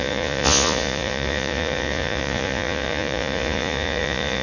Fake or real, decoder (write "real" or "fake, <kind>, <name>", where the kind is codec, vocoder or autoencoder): fake, vocoder, Vocos